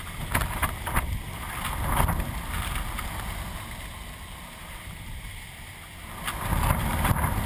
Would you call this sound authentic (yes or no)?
yes